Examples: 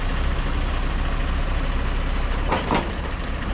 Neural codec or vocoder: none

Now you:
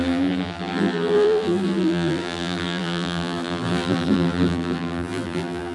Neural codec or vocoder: vocoder, BigVGAN v2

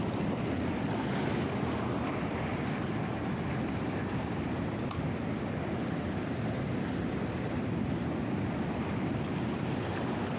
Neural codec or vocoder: none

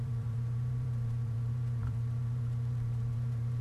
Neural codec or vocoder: vocoder, BigVGAN v2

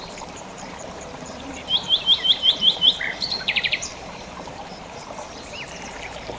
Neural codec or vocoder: vocoder, BigVGAN v2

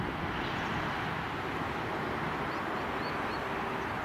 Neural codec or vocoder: none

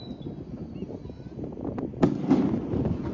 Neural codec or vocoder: none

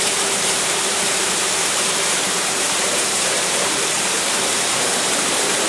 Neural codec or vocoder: vocoder, BigVGAN v2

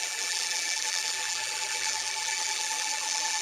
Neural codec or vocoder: vocoder, BigVGAN v2